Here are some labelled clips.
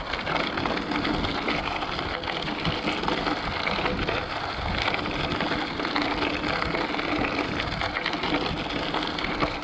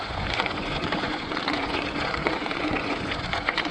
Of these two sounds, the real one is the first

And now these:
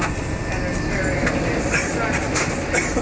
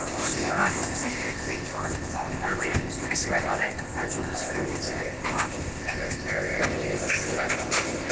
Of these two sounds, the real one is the first